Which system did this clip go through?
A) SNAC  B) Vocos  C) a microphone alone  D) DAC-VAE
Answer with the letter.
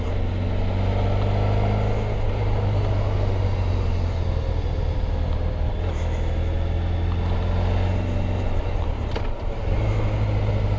C